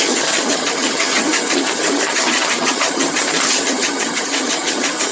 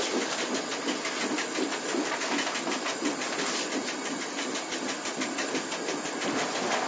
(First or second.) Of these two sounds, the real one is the second